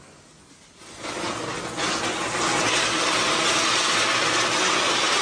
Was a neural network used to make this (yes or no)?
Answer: no